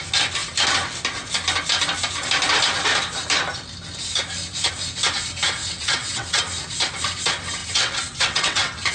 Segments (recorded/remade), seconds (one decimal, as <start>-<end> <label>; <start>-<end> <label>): 0.0-5.6 recorded; 5.6-6.4 remade; 6.4-7.6 recorded; 7.6-8.9 remade